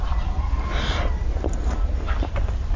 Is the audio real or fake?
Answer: real